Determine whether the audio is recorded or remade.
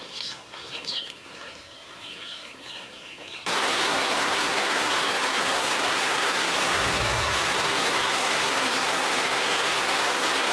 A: remade